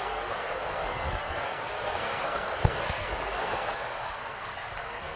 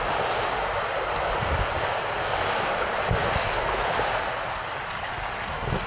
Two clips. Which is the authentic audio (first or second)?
second